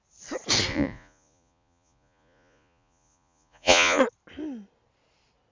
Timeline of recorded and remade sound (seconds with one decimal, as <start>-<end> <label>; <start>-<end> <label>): 0.0-0.7 recorded; 0.7-4.0 remade; 4.0-5.5 recorded